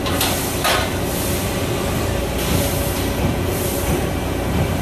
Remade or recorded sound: recorded